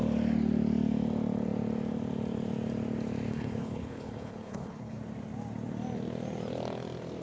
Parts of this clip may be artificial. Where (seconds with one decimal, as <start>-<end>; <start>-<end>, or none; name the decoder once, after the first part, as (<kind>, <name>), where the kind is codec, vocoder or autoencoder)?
3.3-5.0 (codec, HILCodec)